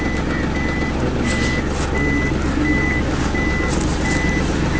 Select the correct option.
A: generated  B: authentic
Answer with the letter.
B